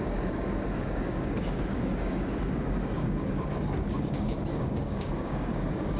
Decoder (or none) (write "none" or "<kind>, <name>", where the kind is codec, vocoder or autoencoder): codec, DAC